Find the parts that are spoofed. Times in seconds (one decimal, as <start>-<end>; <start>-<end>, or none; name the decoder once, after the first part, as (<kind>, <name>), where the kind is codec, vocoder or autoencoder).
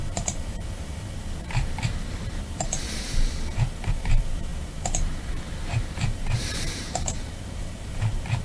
0.0-8.4 (vocoder, BigVGAN v2)